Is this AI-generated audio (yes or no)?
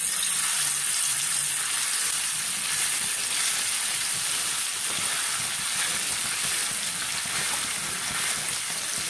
no